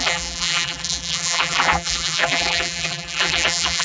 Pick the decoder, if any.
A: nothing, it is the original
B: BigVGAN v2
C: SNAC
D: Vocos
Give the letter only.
B